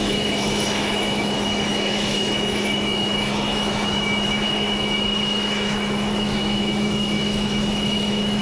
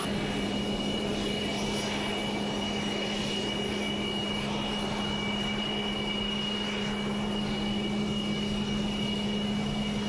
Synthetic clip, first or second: first